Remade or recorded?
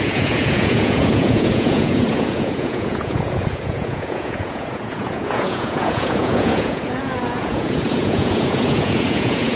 remade